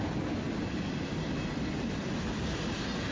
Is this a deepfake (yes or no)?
no